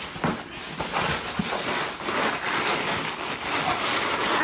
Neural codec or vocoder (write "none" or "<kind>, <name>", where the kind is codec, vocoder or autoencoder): none